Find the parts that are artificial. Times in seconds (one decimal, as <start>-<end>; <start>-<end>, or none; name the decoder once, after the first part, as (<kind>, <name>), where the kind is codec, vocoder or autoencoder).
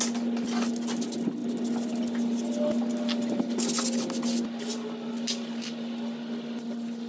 none